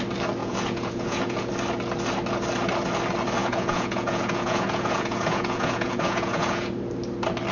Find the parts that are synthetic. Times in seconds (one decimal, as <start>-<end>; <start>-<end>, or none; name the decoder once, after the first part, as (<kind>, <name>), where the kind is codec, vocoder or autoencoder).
0.4-1.5 (vocoder, Vocos); 3.4-6.7